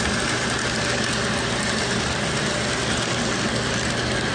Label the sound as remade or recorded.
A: recorded